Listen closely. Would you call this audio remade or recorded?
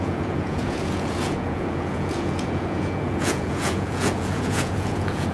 remade